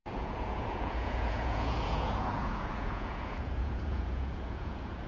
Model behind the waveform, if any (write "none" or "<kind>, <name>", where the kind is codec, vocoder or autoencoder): vocoder, Vocos